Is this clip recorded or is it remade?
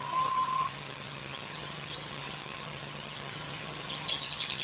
remade